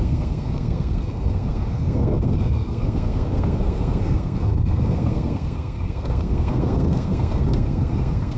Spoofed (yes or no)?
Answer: yes